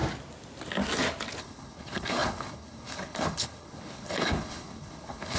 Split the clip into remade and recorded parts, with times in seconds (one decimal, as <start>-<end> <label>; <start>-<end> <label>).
0.0-1.4 recorded; 1.4-5.4 remade